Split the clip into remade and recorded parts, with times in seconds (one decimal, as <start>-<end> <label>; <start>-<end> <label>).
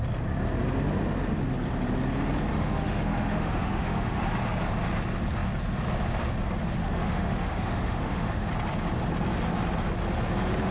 0.0-2.5 recorded; 2.5-4.2 remade; 4.2-6.8 recorded; 6.8-8.5 remade; 8.5-10.7 recorded